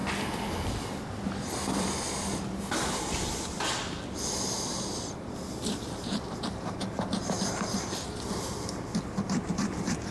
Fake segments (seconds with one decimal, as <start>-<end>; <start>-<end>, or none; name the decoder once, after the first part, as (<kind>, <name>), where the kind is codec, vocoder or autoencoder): 0.0-6.8 (vocoder, BigVGAN v2); 8.3-10.1